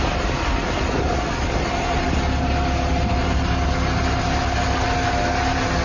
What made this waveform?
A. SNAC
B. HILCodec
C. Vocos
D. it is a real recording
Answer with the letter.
D